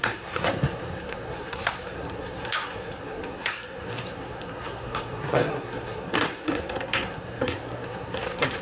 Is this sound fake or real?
fake